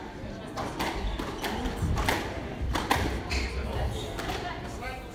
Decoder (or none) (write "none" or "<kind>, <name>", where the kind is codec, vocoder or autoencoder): none